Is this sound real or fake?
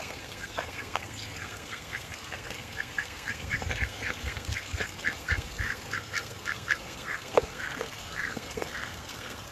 fake